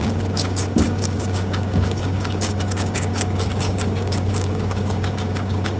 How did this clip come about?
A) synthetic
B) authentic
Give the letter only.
A